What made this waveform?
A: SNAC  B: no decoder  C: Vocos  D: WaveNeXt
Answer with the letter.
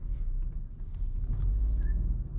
B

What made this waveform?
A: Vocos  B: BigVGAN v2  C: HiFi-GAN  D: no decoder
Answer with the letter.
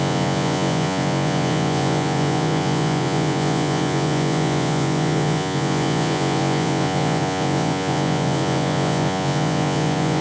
A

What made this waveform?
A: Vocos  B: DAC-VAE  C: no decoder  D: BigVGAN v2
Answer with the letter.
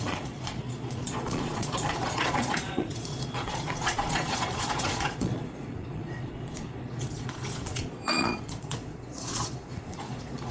A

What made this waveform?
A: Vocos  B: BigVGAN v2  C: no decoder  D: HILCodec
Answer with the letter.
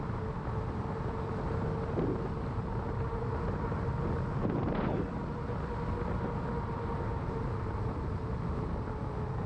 C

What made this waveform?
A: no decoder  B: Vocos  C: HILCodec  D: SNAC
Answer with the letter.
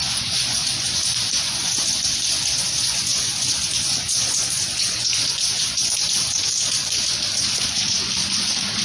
B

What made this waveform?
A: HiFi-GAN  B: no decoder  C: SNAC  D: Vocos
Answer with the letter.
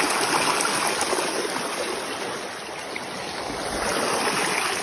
B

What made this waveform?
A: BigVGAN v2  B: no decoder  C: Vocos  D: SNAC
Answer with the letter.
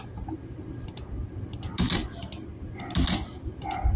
B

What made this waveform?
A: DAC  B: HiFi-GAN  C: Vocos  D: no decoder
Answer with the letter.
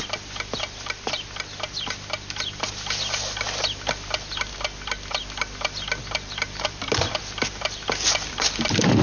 D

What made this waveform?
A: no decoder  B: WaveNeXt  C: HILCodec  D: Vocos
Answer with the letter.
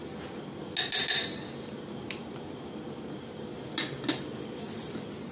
A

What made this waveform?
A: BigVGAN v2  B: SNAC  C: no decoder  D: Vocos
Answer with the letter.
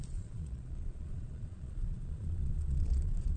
D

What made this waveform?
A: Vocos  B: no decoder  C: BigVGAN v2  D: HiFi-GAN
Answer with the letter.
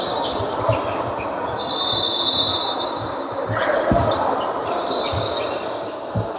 B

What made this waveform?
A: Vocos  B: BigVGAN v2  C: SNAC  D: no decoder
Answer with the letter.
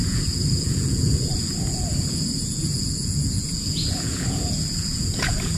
A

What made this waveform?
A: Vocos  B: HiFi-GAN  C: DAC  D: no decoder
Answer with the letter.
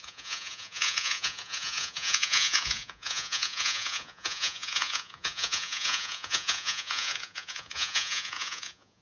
A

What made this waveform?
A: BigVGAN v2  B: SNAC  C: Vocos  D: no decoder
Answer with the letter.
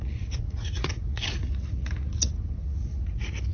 C